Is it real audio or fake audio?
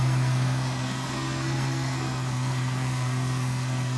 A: fake